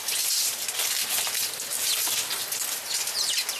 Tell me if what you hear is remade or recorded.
recorded